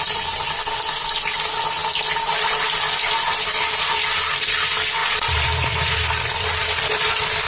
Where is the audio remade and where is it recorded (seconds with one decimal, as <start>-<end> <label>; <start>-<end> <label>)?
0.0-7.5 recorded